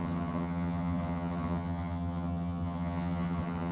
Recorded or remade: remade